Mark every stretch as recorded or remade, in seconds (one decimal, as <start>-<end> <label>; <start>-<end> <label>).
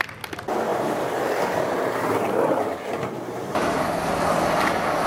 0.0-0.7 recorded; 0.7-3.8 remade; 3.8-5.1 recorded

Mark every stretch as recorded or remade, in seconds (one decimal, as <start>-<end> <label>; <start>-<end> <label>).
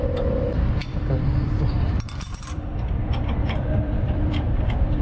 0.0-5.0 remade